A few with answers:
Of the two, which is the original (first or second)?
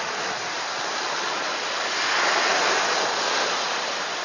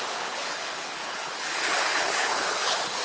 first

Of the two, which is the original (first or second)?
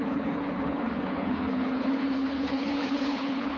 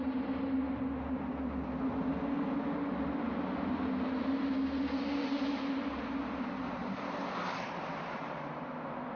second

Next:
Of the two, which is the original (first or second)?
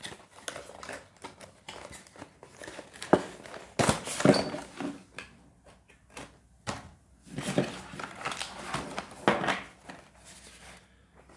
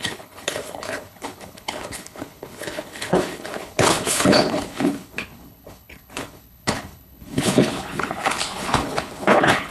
first